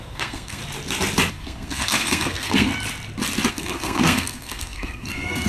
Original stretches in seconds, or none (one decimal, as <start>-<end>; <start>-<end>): 0.6-1.3; 2.7-3.5